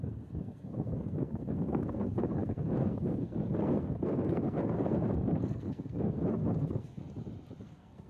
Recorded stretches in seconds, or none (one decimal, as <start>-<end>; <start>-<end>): 7.0-7.6